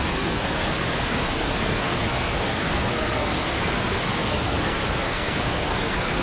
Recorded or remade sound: remade